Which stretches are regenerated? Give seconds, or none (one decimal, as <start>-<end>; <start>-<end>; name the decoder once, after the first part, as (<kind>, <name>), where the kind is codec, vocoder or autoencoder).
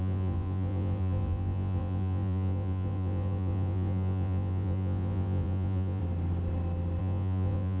0.0-6.0 (vocoder, Vocos); 7.0-7.8